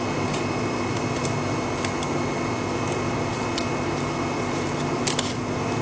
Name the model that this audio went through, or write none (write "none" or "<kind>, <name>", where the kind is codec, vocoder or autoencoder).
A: none